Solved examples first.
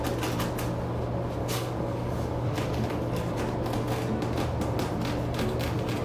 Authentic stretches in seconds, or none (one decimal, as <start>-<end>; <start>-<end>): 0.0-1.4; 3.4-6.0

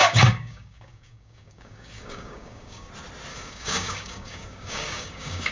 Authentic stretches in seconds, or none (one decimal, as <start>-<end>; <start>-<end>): 2.9-3.3

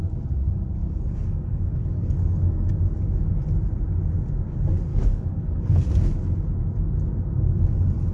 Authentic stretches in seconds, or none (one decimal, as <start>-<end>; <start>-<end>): 0.0-0.8; 2.7-4.9; 5.8-8.1